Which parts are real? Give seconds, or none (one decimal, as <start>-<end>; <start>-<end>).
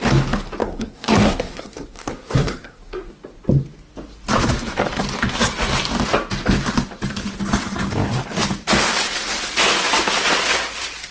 0.0-0.6; 3.1-11.1